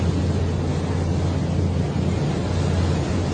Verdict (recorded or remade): recorded